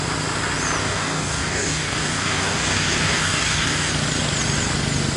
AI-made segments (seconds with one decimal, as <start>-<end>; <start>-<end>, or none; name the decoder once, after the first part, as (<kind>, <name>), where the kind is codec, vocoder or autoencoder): 0.8-3.9 (codec, DAC)